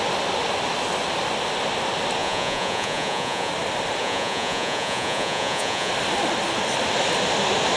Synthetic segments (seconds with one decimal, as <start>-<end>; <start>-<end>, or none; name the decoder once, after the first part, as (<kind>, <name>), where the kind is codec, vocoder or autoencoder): 2.2-3.5 (vocoder, Vocos); 4.0-5.9